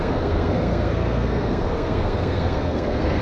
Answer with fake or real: fake